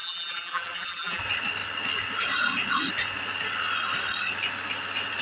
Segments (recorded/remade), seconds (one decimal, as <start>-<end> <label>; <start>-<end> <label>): 0.0-1.2 remade; 1.2-5.2 recorded